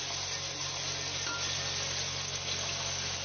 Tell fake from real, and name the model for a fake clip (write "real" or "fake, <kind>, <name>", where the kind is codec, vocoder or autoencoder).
real